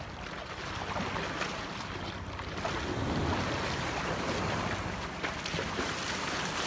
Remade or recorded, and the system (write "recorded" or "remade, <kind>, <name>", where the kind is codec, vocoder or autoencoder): recorded